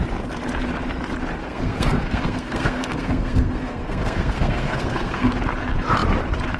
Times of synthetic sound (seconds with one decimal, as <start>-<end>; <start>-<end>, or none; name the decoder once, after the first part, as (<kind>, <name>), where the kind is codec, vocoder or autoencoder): 1.4-5.4 (codec, SNAC)